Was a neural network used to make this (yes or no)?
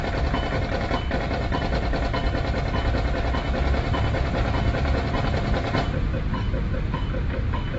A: no